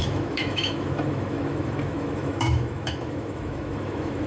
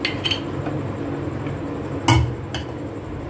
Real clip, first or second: second